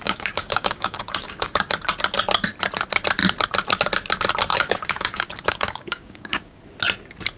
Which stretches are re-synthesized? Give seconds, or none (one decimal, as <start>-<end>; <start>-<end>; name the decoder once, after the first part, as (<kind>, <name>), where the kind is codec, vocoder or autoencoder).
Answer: 0.0-1.7 (codec, DAC); 4.5-6.6